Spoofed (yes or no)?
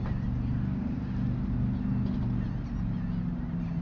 no